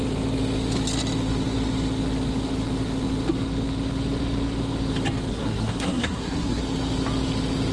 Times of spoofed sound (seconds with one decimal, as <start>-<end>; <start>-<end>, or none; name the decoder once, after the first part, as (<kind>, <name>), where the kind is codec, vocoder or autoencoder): 5.3-6.6 (codec, SNAC)

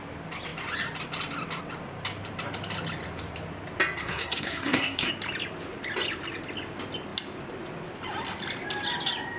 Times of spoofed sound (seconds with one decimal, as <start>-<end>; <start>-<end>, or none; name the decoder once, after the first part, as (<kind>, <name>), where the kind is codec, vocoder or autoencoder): 4.0-5.1 (codec, SNAC)

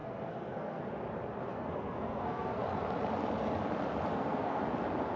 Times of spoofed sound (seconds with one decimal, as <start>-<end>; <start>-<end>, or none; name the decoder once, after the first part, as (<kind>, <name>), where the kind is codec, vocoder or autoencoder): 0.0-0.8 (codec, SNAC); 1.5-2.6; 4.1-4.6